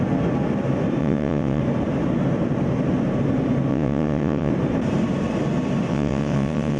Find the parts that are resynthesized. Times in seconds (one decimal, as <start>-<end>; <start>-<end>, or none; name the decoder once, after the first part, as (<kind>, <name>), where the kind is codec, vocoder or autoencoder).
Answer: 1.0-1.6 (vocoder, WaveNeXt); 3.7-4.5; 5.9-6.8